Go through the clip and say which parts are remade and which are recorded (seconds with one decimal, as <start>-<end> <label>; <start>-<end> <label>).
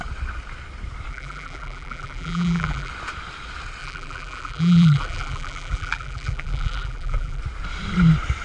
0.0-1.1 recorded; 1.1-2.9 remade; 2.9-3.8 recorded; 3.8-7.4 remade; 7.4-8.4 recorded